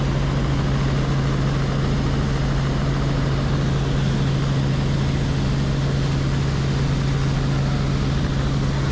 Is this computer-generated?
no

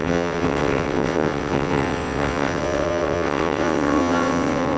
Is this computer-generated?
yes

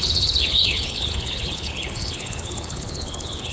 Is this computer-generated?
yes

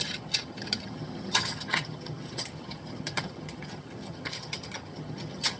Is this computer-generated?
yes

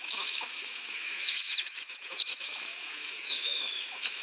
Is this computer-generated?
yes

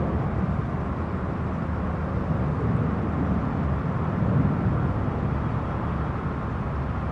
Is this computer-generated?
no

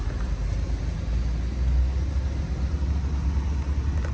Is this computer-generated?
no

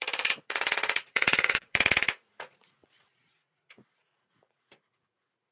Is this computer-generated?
yes